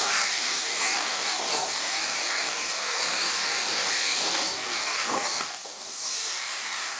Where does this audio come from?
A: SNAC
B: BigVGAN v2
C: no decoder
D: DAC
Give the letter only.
D